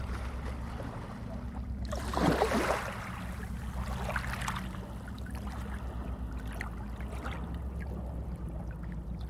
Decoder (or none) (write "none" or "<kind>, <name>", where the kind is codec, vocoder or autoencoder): none